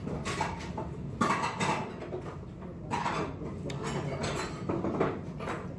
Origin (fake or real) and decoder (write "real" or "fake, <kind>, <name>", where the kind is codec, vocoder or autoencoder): real